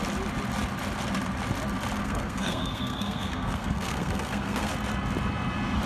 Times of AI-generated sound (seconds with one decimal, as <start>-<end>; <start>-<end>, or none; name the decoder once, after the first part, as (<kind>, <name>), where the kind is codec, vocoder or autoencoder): 2.0-4.7 (codec, SNAC)